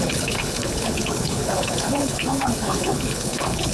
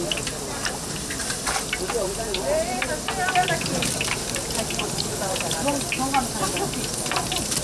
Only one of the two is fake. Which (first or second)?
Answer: first